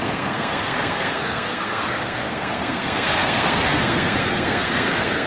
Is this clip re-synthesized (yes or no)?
yes